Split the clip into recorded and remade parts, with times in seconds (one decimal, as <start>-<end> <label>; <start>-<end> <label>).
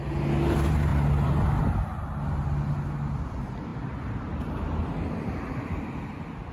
0.0-6.5 recorded